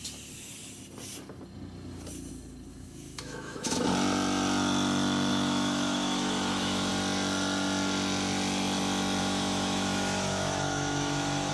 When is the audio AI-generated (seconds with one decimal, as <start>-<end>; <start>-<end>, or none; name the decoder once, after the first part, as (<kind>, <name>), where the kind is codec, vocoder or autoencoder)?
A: 2.7-3.9 (autoencoder, DAC-VAE); 5.3-6.9; 9.2-11.5